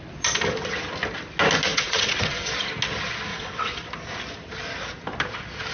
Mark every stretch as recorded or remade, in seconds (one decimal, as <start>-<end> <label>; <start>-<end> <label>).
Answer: 0.0-1.7 recorded; 1.7-2.5 remade; 2.5-3.3 recorded; 3.3-3.9 remade; 3.9-5.7 recorded